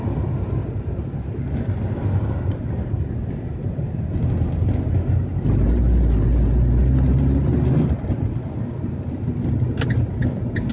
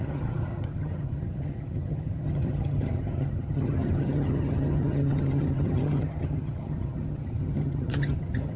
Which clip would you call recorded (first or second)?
first